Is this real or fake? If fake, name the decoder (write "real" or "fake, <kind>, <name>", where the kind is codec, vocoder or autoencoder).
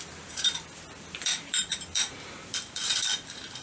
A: fake, vocoder, BigVGAN v2